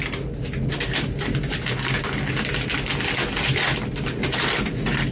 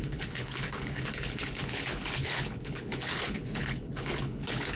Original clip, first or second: first